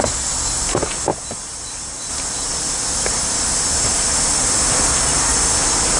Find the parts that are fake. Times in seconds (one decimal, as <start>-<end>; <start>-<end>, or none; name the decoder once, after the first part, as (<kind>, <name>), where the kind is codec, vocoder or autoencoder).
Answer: none

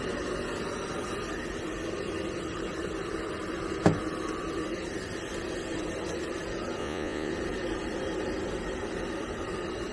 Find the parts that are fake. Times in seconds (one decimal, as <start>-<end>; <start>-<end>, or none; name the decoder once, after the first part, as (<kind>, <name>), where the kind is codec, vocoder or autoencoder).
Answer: 6.8-7.3 (vocoder, Vocos)

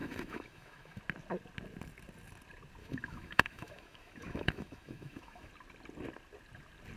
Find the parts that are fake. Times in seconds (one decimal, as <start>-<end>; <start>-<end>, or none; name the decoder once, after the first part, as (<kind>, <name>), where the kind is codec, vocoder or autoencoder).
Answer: 0.0-1.0 (autoencoder, DAC-VAE); 2.8-5.5

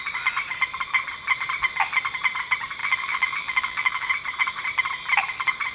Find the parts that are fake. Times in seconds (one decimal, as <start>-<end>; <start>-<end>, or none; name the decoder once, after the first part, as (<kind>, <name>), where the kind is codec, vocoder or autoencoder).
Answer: 2.8-4.1 (vocoder, BigVGAN v2)

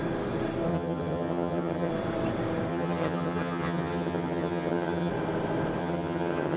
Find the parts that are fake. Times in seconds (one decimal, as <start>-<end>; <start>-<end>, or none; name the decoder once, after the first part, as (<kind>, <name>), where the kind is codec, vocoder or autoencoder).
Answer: 0.7-1.9 (vocoder, HiFi-GAN); 2.7-5.1; 5.8-6.6